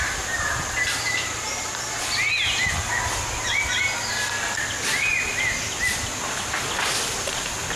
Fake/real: real